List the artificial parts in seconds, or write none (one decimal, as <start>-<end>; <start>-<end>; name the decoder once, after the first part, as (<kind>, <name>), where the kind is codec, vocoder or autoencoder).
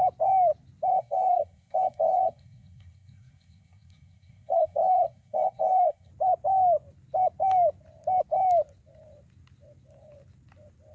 0.9-6.1 (codec, SNAC)